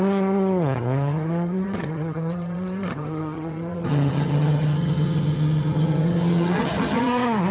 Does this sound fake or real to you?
fake